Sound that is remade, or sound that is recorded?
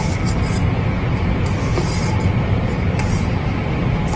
recorded